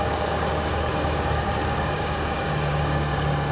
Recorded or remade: remade